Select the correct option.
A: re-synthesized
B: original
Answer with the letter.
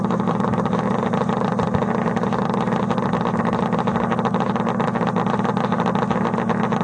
B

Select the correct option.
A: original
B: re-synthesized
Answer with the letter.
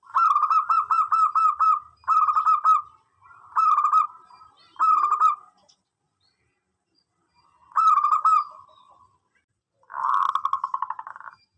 A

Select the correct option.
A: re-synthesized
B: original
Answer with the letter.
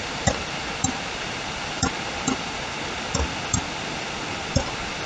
B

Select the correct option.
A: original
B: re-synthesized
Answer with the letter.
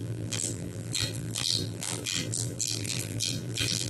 B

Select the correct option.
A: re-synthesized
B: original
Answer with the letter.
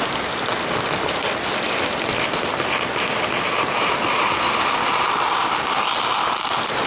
B